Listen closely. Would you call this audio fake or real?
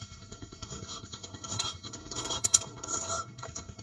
fake